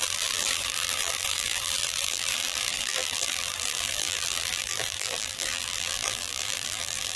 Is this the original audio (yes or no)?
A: no